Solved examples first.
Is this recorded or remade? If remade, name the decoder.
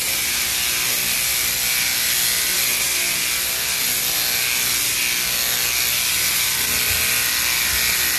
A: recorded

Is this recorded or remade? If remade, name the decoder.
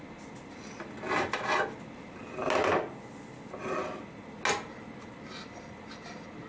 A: recorded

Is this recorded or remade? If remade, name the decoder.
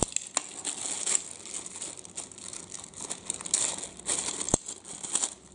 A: recorded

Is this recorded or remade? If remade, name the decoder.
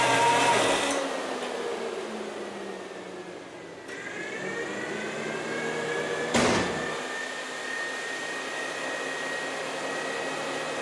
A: recorded